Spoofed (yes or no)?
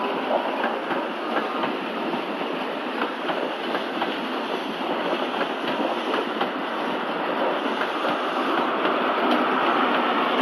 no